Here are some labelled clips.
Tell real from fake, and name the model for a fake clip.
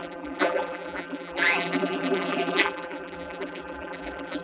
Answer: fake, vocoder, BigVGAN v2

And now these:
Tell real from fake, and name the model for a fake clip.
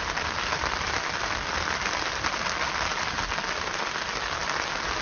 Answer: real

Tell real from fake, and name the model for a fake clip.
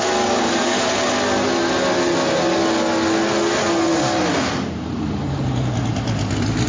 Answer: real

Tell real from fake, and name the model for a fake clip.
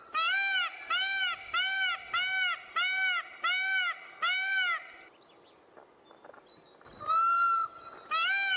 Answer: real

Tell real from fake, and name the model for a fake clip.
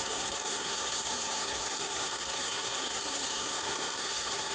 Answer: fake, codec, SNAC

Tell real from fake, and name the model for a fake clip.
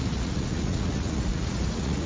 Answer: fake, vocoder, Vocos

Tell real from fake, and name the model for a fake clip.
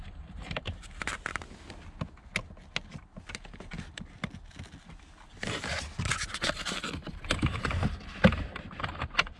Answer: real